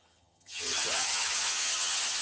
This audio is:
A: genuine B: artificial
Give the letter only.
B